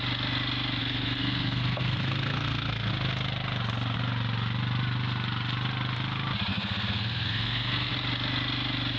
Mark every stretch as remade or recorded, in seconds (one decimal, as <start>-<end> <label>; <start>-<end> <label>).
0.0-0.8 recorded; 0.8-2.9 remade; 2.9-6.5 recorded; 6.5-7.9 remade; 7.9-9.0 recorded